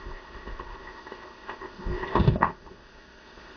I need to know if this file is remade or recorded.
remade